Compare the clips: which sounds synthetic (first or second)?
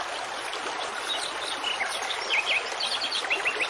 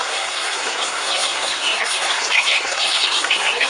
second